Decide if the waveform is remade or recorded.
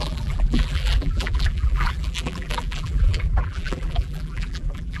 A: remade